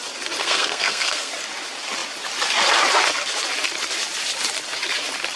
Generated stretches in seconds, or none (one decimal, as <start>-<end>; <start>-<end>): 0.4-1.3